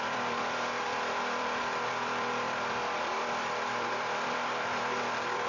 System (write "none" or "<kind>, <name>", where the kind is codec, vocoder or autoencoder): vocoder, BigVGAN v2